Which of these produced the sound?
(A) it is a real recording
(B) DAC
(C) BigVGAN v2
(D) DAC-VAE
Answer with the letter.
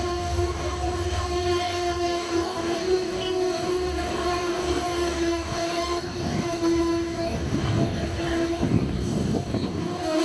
B